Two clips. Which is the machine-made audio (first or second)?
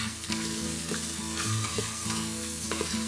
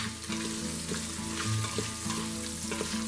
first